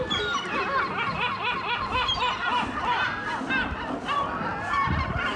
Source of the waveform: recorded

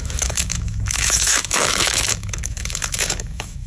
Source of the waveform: remade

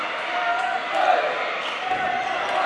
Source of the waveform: recorded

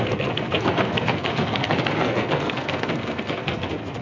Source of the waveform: remade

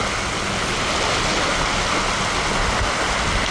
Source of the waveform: recorded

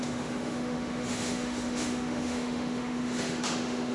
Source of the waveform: remade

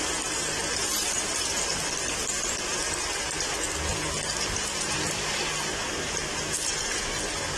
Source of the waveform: recorded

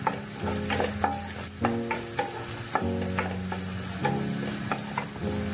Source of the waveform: recorded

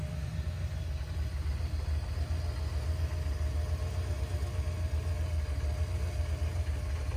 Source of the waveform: recorded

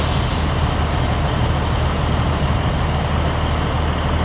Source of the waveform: recorded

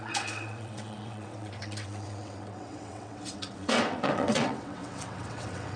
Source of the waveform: remade